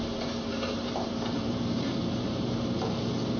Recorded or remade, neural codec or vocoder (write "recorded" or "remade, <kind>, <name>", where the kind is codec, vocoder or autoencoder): remade, vocoder, BigVGAN v2